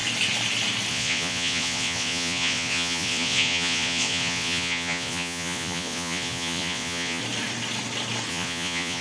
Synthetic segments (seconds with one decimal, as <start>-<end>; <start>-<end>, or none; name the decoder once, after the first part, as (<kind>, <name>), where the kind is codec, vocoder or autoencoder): 0.9-7.2 (vocoder, Vocos); 8.3-9.0